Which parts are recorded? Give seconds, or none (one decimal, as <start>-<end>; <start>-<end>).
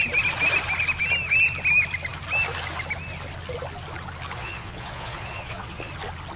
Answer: 0.0-4.4; 5.9-6.4